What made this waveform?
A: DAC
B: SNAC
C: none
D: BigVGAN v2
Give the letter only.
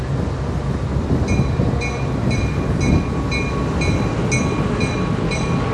C